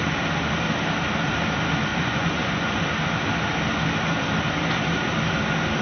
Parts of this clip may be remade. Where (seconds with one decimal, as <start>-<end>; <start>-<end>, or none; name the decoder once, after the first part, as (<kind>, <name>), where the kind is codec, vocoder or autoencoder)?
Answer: 1.9-2.8 (vocoder, Vocos)

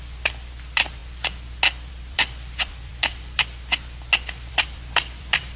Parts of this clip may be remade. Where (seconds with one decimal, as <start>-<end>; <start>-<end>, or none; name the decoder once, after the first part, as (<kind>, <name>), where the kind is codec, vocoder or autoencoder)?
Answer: 0.0-1.0 (vocoder, BigVGAN v2); 1.9-2.9; 4.5-5.6

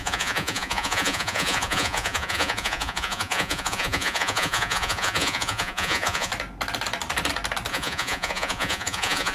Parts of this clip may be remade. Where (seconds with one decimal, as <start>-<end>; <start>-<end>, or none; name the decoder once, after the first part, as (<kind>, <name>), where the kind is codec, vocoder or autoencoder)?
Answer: 0.0-6.3 (vocoder, Vocos); 7.7-9.3

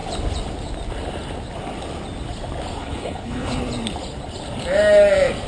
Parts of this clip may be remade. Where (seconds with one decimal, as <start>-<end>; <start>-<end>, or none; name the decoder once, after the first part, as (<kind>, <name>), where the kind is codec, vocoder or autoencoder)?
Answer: 2.8-3.6 (codec, HILCodec)

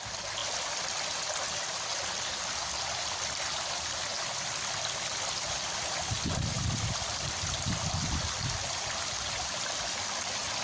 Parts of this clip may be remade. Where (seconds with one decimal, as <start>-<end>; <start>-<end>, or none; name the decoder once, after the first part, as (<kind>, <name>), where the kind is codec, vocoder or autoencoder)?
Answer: none

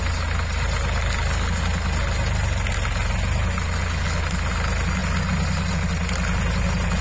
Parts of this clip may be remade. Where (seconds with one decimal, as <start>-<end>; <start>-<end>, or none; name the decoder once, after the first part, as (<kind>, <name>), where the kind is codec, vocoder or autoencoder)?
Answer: none